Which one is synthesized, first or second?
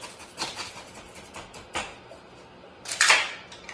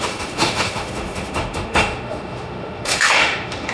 second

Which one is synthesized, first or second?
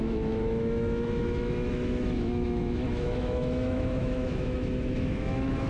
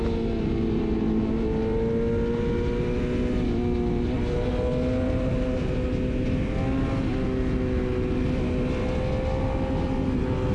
first